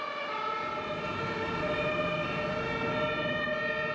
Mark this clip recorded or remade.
recorded